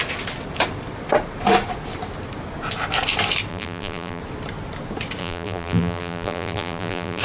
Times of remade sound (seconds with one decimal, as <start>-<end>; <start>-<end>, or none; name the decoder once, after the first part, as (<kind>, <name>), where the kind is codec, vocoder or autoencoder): 3.5-4.2 (vocoder, BigVGAN v2); 5.2-7.2